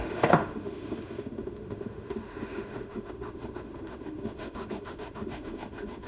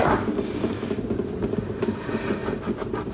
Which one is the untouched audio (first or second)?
second